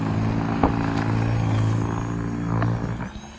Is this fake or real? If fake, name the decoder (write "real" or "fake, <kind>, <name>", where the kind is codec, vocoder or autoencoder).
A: real